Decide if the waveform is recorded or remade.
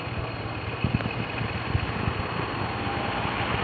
recorded